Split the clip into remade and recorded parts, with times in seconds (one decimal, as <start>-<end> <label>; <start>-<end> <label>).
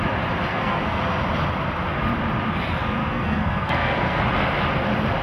0.0-0.5 recorded; 0.5-1.0 remade; 1.0-3.0 recorded; 3.0-4.2 remade; 4.2-5.2 recorded